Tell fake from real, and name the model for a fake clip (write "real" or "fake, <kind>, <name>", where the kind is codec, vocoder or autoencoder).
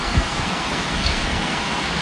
fake, codec, SNAC